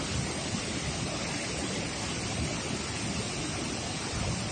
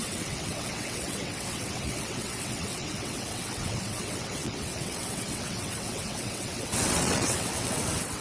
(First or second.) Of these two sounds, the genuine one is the first